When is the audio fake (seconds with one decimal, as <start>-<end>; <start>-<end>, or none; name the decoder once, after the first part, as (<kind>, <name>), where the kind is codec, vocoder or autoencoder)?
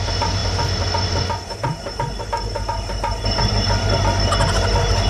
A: none